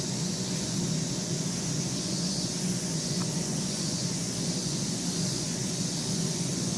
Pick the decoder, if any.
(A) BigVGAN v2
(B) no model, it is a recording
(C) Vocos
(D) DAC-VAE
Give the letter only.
C